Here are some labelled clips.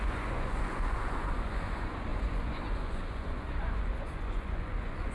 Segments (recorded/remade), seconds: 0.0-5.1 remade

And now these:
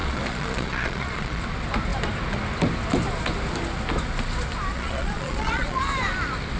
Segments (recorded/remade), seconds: 0.0-1.4 remade; 1.4-4.7 recorded; 4.7-5.8 remade; 5.8-6.6 recorded